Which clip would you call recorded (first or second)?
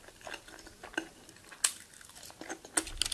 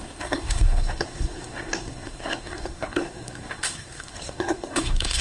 first